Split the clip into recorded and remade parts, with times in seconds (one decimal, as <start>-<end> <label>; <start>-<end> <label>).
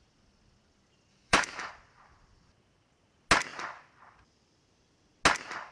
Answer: 0.0-1.1 recorded; 1.1-1.7 remade; 1.7-5.7 recorded